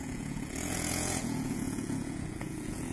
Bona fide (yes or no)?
no